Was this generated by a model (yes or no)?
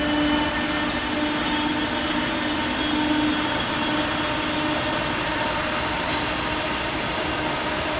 no